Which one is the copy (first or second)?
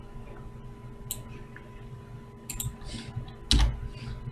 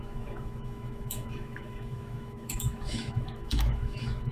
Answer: second